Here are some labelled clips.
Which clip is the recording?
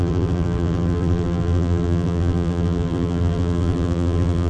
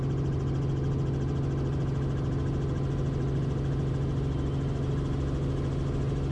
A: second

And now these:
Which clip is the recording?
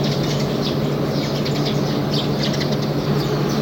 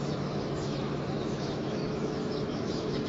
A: first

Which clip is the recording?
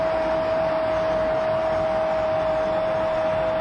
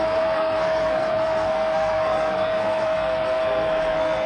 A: first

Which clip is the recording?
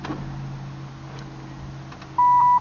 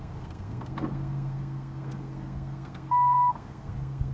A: first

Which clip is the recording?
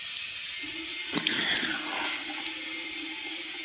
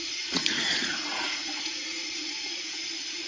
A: first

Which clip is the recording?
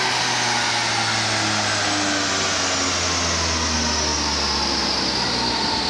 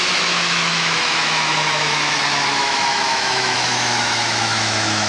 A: first